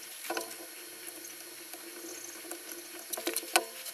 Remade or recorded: recorded